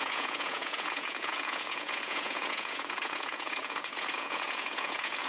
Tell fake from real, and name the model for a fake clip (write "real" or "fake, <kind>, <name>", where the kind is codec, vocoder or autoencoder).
fake, vocoder, Vocos